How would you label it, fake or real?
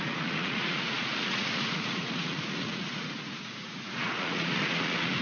fake